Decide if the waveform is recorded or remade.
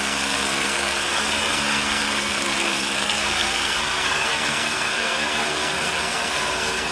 remade